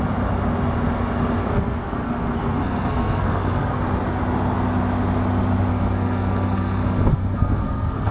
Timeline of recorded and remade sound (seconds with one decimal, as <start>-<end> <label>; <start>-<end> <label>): 0.0-1.4 recorded; 1.4-3.8 remade; 3.8-5.7 recorded; 5.7-8.1 remade